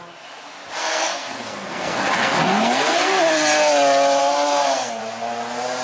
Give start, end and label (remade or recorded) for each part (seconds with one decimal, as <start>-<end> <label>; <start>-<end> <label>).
0.0-0.8 recorded; 0.8-3.2 remade; 3.2-4.2 recorded; 4.2-5.0 remade; 5.0-5.8 recorded